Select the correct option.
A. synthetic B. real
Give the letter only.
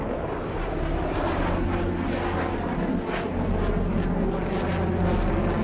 B